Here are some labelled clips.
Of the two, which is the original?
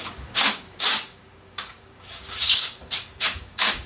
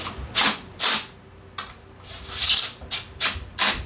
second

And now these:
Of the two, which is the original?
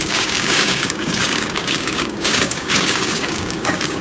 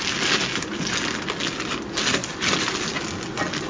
second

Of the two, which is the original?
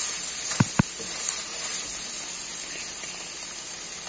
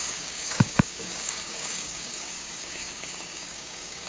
first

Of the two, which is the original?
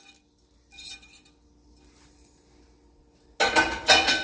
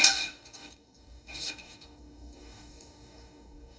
first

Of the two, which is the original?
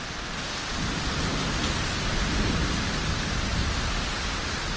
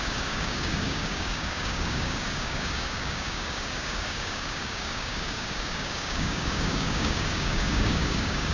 first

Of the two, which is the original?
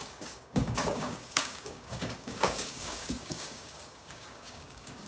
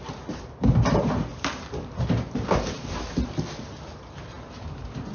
second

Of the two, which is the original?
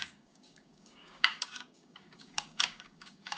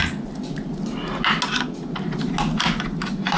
second